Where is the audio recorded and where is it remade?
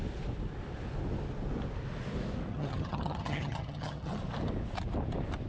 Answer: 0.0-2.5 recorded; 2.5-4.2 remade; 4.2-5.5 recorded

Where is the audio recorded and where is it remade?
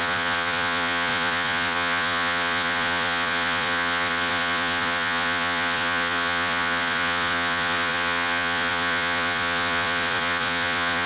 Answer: 0.0-11.1 remade